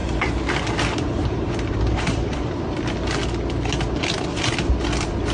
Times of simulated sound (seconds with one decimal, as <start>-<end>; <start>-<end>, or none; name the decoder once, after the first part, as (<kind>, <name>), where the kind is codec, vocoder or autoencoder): 0.0-2.6 (vocoder, BigVGAN v2)